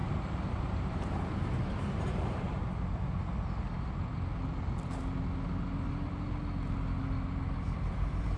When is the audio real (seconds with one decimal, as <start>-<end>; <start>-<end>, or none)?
2.6-8.4